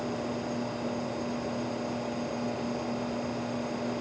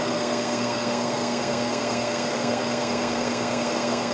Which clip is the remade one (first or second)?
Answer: second